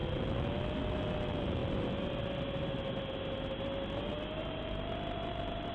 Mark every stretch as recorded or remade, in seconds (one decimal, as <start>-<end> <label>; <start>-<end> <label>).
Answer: 0.0-4.4 recorded; 4.4-5.7 remade